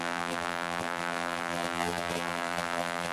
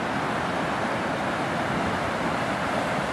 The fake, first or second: first